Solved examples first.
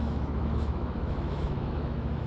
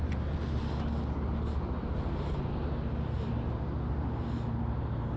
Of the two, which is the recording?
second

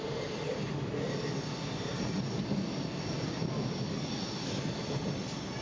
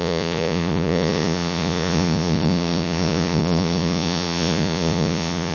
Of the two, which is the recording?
first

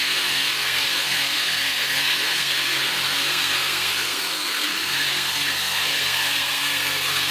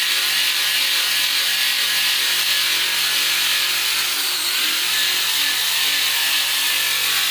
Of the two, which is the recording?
second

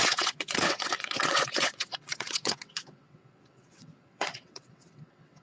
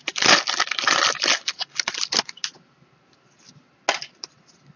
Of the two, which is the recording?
second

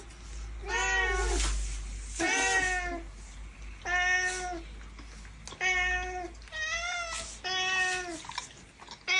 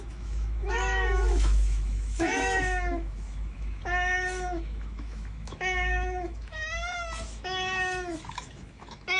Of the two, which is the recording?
first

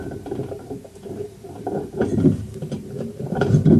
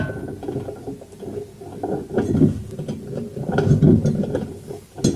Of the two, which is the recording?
second